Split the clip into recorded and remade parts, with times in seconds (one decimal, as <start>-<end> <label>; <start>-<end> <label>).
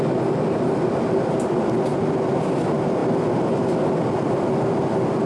0.0-5.3 recorded